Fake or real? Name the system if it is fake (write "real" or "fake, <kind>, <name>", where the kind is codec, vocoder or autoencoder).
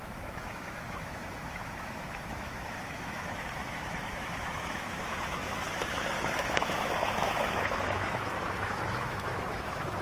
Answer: fake, autoencoder, DAC-VAE